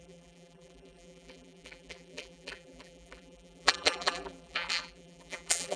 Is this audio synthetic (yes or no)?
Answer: yes